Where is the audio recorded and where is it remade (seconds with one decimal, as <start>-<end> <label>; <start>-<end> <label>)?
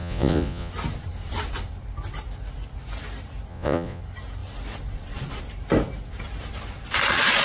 0.0-0.7 remade; 0.7-3.5 recorded; 3.5-4.0 remade; 4.0-7.4 recorded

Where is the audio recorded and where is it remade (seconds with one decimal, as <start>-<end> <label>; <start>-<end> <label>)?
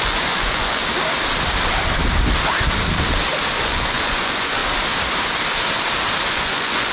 0.0-0.8 remade; 0.8-3.6 recorded; 3.6-4.6 remade; 4.6-6.3 recorded; 6.3-6.9 remade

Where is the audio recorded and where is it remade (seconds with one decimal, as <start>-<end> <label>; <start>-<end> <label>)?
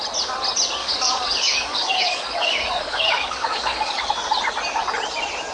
0.0-0.8 recorded; 0.8-4.1 remade; 4.1-5.5 recorded